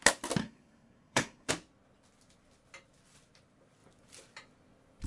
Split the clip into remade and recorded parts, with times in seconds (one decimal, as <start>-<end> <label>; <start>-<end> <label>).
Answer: 0.0-0.4 recorded; 0.4-1.5 remade; 1.5-5.1 recorded